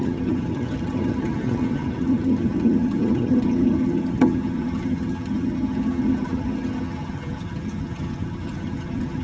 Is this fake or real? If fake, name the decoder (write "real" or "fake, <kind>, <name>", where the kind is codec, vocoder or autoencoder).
fake, vocoder, HiFi-GAN